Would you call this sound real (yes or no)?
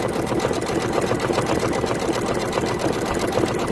yes